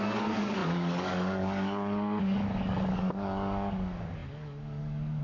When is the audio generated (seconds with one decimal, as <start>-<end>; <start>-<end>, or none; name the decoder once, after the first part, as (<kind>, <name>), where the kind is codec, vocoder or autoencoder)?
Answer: 0.0-5.2 (codec, DAC)